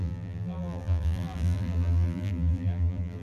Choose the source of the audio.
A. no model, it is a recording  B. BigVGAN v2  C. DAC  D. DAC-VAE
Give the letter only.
B